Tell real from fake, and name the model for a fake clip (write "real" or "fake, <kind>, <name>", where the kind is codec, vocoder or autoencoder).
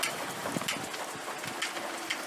real